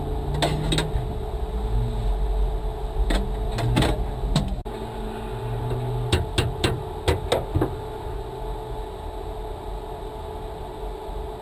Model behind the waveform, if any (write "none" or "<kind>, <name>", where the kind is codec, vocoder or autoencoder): none